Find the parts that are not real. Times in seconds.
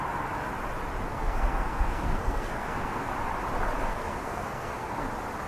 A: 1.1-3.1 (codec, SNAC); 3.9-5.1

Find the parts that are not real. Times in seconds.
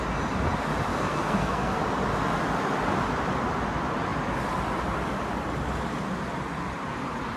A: 0.9-1.8 (codec, SNAC)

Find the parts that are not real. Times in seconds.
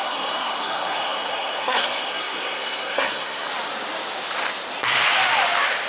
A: 0.0-3.5 (codec, SNAC)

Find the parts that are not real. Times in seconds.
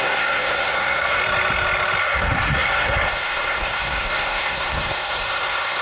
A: 0.0-1.2 (codec, SNAC); 2.0-5.8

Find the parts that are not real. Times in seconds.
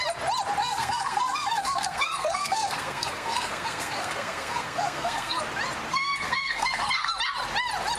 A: 0.6-5.4 (codec, SNAC); 5.9-7.1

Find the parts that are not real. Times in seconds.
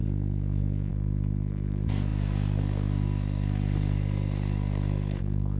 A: 0.0-5.6 (codec, SNAC)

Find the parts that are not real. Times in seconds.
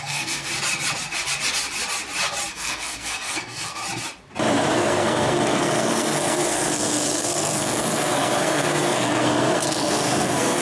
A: 0.0-0.5 (codec, SNAC); 2.5-3.8; 4.7-10.6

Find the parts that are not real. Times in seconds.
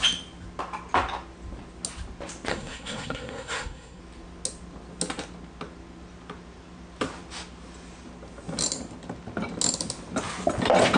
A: 2.5-4.0 (codec, SNAC)